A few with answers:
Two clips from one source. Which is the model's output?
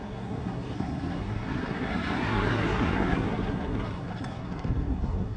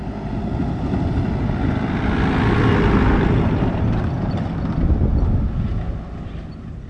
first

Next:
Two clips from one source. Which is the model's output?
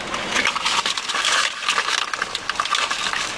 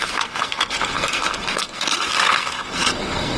second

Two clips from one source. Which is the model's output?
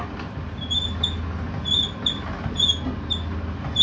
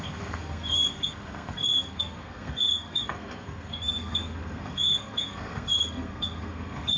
second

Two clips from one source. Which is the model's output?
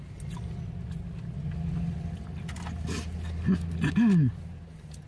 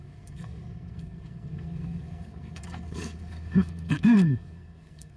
second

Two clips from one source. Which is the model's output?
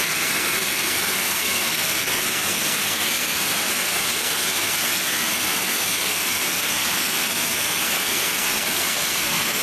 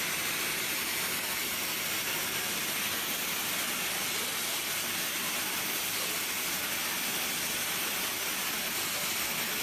first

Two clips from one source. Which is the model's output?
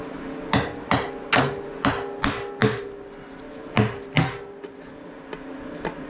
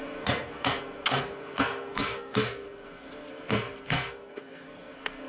second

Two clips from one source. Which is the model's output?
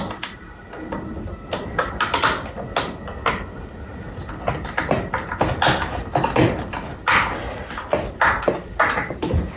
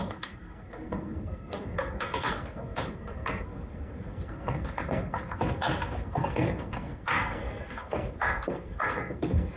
second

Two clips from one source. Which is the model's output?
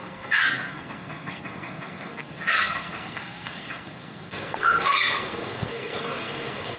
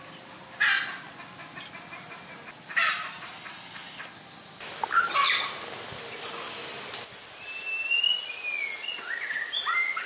first